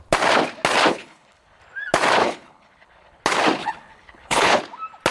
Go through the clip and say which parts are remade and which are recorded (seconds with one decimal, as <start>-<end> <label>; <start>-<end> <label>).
0.0-0.9 recorded; 0.9-1.6 remade; 1.6-2.2 recorded; 2.2-3.2 remade; 3.2-3.6 recorded; 3.6-4.6 remade; 4.6-5.1 recorded